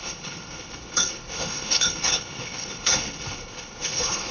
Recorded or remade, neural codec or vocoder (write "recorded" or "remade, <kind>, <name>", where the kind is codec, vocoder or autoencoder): remade, codec, HILCodec